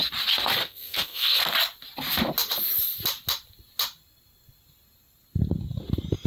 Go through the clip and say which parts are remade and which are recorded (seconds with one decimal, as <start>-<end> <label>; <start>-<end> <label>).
0.0-0.6 recorded; 0.6-1.4 remade; 1.4-6.3 recorded